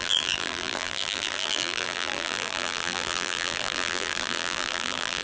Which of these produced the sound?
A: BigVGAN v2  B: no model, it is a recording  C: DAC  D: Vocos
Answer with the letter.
A